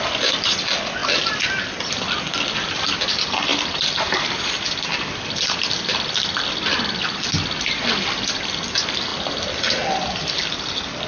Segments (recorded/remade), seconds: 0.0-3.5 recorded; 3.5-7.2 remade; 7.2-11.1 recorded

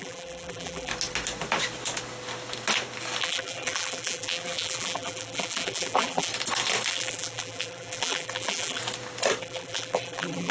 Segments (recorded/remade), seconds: 0.0-0.9 remade; 0.9-3.2 recorded; 3.2-6.3 remade; 6.3-6.9 recorded; 6.9-8.8 remade; 8.8-9.4 recorded; 9.4-10.5 remade

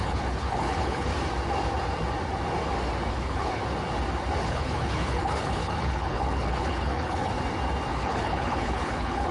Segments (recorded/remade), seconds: 0.0-1.1 remade; 1.1-3.1 recorded; 3.1-3.6 remade; 3.6-4.4 recorded; 4.4-7.3 remade; 7.3-7.9 recorded; 7.9-9.3 remade

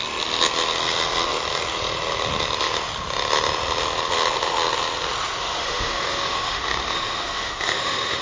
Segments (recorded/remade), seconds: 0.0-5.4 recorded; 5.4-8.2 remade

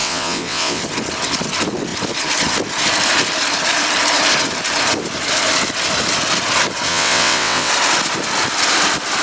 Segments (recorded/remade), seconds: 0.0-0.8 remade; 0.8-6.9 recorded; 6.9-7.7 remade; 7.7-9.2 recorded